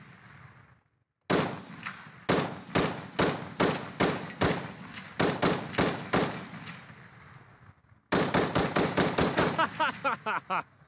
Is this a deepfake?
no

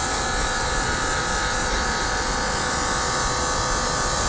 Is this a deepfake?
yes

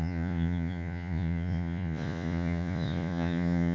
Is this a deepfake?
yes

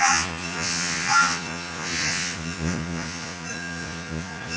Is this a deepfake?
yes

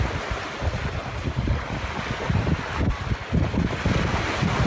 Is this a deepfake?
no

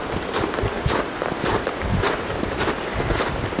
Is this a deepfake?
no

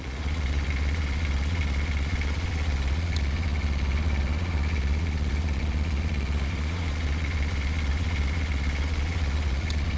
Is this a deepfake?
yes